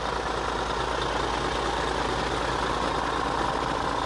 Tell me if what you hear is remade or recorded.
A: recorded